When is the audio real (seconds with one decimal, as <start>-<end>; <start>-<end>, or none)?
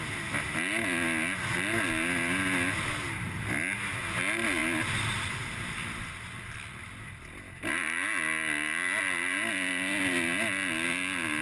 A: 0.0-11.4